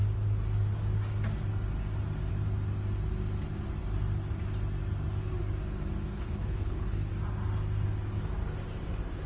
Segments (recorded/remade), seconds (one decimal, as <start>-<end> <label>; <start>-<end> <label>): 0.0-6.1 recorded; 6.1-7.1 remade; 7.1-9.3 recorded